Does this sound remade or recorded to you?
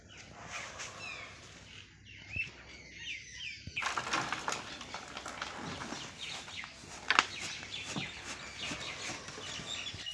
recorded